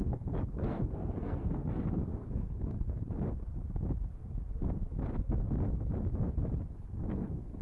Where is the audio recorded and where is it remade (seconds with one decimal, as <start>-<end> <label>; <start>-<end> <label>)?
0.0-3.0 remade; 3.0-6.7 recorded; 6.7-7.6 remade